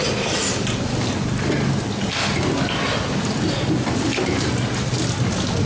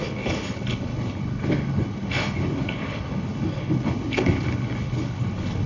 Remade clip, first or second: second